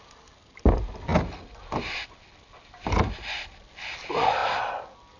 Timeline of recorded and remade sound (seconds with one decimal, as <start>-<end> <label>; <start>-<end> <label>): 0.0-5.2 recorded